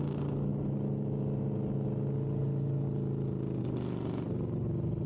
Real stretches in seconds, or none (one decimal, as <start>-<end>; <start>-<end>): 0.0-5.1